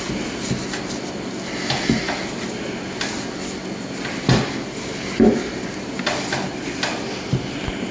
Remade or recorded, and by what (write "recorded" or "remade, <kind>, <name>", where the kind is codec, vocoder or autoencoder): recorded